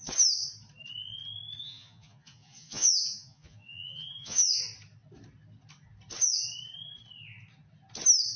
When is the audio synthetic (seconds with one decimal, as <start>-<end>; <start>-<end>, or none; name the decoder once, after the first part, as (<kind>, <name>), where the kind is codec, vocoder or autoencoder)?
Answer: 1.6-4.6 (vocoder, Vocos)